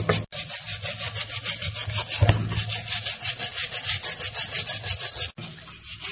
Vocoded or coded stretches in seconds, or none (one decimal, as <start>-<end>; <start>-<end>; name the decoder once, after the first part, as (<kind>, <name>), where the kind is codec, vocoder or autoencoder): none